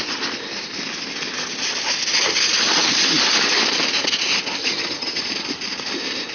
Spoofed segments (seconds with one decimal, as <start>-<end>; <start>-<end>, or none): 4.6-5.2